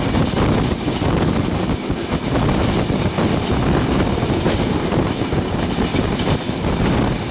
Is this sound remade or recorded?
recorded